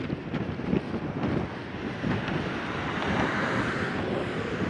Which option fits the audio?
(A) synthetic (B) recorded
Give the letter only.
B